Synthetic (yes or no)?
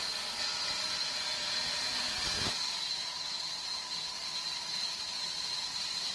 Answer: no